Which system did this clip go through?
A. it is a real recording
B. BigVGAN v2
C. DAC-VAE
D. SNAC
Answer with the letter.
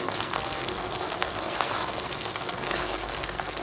D